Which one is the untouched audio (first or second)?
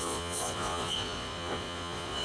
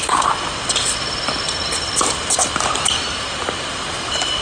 second